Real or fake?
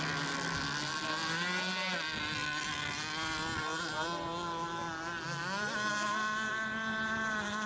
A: real